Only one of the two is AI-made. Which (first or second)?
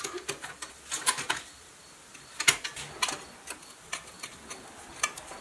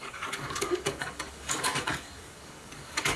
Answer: second